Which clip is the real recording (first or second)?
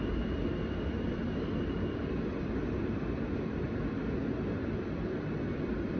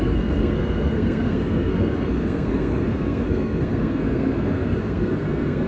first